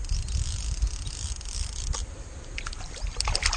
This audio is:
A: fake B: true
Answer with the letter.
B